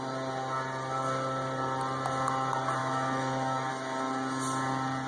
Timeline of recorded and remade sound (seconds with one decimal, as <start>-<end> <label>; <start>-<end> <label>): 0.0-2.8 recorded; 2.8-3.7 remade; 3.7-5.1 recorded